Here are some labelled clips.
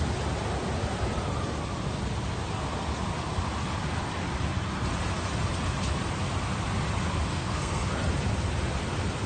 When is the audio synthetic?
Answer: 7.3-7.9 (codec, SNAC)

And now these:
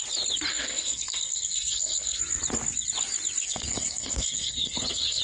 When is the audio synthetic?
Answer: 0.5-2.2 (codec, SNAC); 3.4-5.2

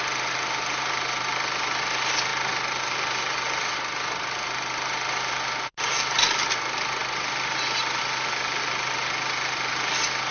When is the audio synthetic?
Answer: none

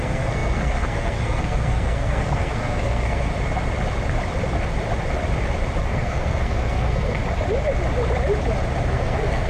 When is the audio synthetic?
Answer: 0.0-3.3 (codec, SNAC); 5.8-7.2; 8.9-9.5